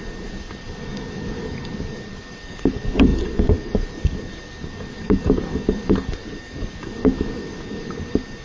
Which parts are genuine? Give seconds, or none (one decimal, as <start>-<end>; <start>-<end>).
none